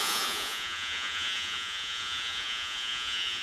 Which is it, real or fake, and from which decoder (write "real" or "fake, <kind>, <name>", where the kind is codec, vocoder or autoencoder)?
fake, vocoder, Vocos